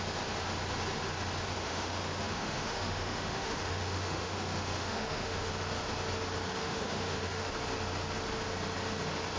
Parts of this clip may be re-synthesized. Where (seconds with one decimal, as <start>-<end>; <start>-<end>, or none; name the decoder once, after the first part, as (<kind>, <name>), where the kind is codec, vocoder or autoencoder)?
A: 1.6-5.5 (autoencoder, DAC-VAE); 6.6-7.5